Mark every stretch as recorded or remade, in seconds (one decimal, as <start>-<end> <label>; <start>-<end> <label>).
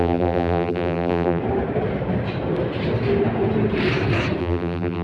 0.0-1.4 remade; 1.4-4.4 recorded; 4.4-5.0 remade